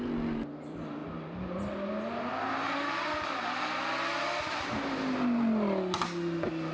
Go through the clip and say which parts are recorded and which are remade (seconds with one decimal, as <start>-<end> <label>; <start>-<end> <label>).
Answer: 0.0-6.7 recorded